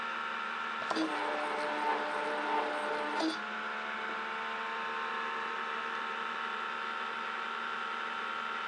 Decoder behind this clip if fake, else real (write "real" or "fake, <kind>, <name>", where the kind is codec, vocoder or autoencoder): real